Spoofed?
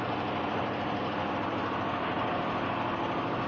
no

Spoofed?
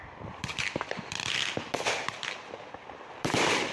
yes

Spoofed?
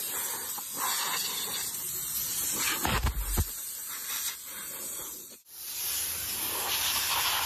yes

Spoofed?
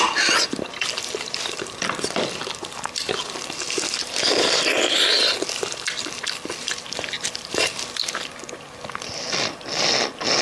yes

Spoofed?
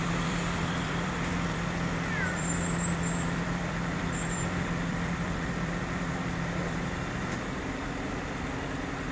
yes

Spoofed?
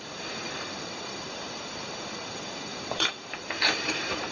yes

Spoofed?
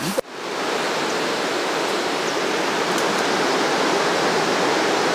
no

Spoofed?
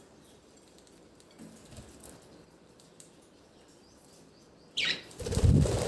yes